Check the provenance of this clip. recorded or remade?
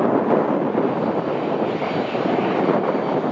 recorded